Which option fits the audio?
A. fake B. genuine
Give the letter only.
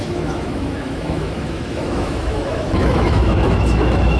A